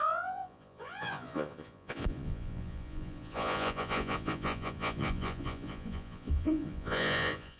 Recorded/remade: remade